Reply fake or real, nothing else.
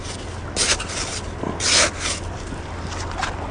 real